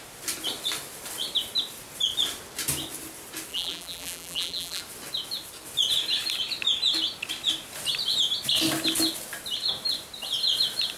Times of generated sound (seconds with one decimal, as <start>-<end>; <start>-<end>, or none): 3.5-4.8

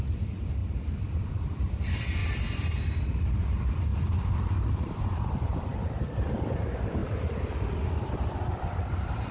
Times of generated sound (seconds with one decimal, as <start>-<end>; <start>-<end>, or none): 0.0-0.6; 1.2-2.2; 3.4-3.9; 4.7-7.0; 8.6-9.3

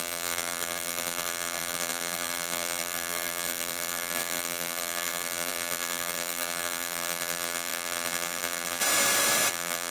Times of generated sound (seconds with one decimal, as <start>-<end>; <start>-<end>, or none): 0.0-8.8; 9.5-9.9

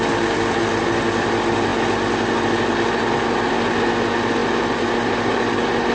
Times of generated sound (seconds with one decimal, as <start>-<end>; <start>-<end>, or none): none